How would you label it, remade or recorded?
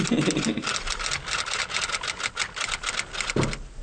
recorded